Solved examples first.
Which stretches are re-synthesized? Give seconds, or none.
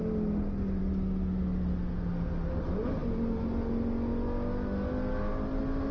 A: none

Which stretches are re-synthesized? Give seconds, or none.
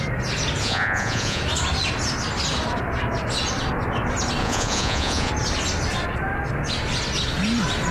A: 0.6-1.4 (vocoder, Vocos); 4.4-5.3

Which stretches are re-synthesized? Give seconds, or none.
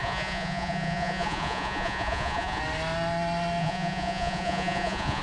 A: 0.0-2.6 (vocoder, Vocos); 3.6-5.2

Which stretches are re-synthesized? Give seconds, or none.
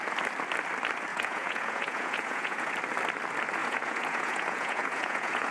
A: 1.1-2.7 (vocoder, Vocos); 3.6-5.5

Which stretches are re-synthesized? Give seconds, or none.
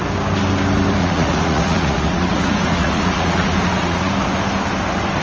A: 1.0-4.1 (vocoder, Vocos)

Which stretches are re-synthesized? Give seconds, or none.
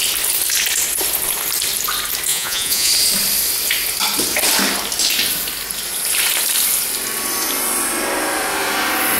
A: 2.3-2.9 (vocoder, Vocos)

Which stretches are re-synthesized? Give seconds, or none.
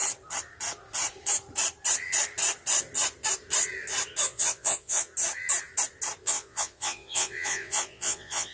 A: 4.2-5.1 (vocoder, Vocos); 6.2-8.5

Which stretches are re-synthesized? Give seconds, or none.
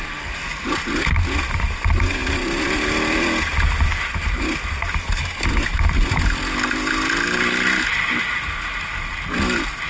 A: none